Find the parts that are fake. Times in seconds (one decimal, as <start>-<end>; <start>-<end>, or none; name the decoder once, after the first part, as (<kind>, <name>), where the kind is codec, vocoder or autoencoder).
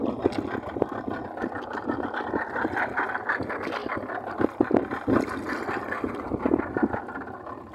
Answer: none